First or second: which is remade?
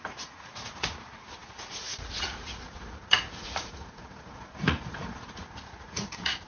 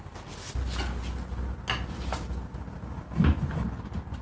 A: first